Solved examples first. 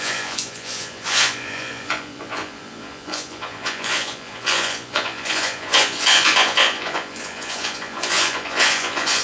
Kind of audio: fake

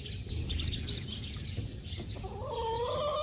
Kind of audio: real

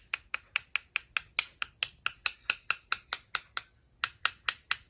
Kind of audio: real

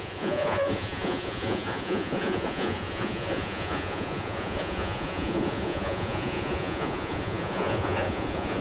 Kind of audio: fake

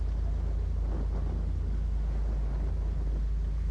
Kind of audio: real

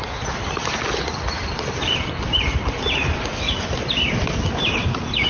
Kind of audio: real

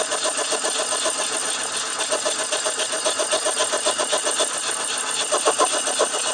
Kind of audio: real